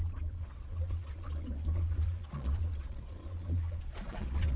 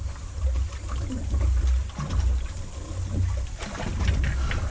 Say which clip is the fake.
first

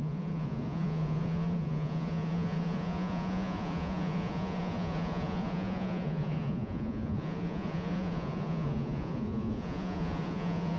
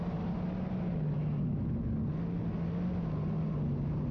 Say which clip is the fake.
first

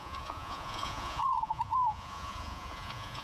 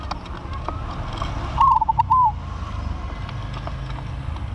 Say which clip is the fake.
first